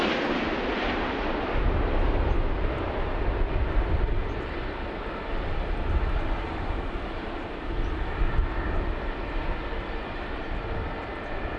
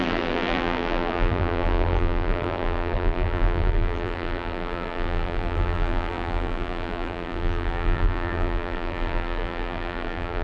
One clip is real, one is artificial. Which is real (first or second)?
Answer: first